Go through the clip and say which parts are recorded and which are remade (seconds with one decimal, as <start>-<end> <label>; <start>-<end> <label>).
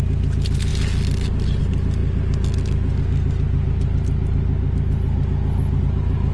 0.0-6.3 recorded